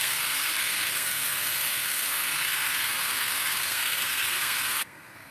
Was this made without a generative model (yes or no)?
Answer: no